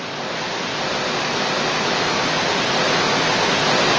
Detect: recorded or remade remade